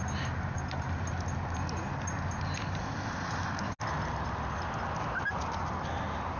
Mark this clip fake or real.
real